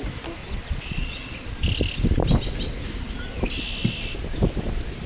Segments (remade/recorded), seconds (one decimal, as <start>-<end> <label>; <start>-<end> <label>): 0.0-0.4 recorded; 0.4-1.6 remade; 1.6-5.1 recorded